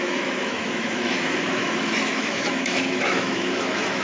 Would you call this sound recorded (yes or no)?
no